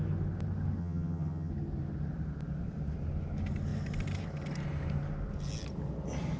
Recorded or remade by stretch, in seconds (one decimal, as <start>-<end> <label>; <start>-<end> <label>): 0.0-0.8 recorded; 0.8-1.5 remade; 1.5-6.4 recorded